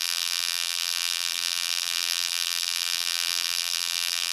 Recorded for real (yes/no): no